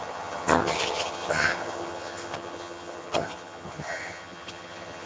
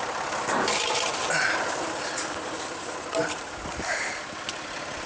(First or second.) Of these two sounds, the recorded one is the second